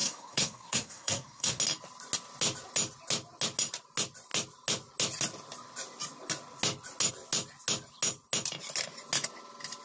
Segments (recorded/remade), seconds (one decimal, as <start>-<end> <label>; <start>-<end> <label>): 0.0-1.6 remade; 1.6-9.8 recorded